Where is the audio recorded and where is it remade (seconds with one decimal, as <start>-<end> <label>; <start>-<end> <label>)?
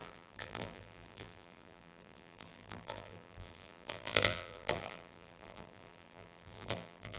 0.0-7.2 remade